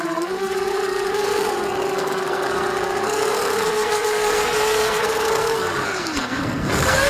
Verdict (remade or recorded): remade